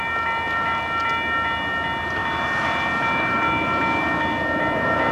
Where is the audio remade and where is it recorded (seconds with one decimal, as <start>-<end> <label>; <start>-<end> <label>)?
0.0-5.1 recorded